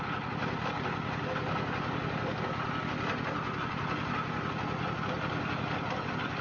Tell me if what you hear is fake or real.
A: real